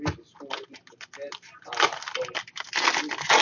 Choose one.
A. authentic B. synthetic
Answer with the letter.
A